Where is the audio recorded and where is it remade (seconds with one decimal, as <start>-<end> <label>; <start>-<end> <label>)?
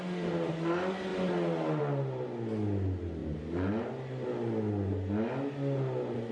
0.0-6.3 recorded